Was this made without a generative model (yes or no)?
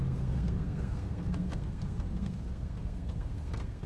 no